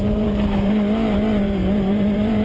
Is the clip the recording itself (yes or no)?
no